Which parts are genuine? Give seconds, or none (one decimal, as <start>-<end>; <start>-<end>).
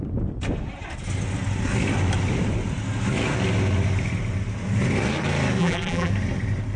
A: 0.0-5.6; 6.1-6.8